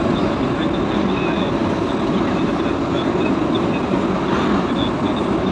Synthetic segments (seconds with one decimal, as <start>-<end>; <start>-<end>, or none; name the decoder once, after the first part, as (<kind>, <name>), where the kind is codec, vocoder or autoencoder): none